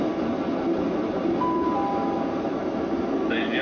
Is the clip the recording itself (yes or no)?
yes